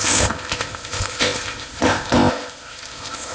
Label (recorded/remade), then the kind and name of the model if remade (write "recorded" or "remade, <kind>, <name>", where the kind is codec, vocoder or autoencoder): remade, codec, ZipCodec